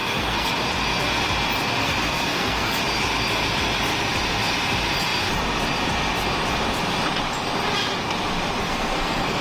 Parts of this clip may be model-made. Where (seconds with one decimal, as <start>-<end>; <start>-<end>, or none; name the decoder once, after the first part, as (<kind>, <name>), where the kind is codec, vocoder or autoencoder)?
0.0-0.5 (codec, SNAC); 1.8-2.8; 8.6-9.4

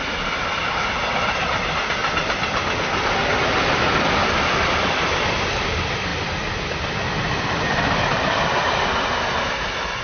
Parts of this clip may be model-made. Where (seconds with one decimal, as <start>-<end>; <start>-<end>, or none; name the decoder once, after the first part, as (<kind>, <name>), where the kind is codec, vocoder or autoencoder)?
0.0-2.0 (vocoder, BigVGAN v2); 4.1-6.1; 7.6-10.0